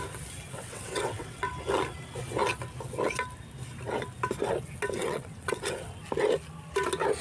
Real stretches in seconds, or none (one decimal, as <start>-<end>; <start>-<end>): 0.0-0.5; 1.5-5.0; 5.6-7.2